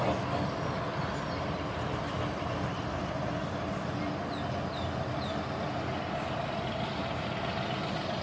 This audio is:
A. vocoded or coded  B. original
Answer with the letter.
B